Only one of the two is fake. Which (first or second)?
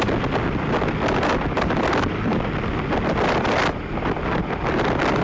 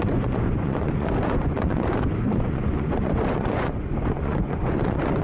second